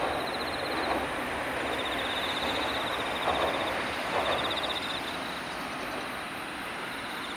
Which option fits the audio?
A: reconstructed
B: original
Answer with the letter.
B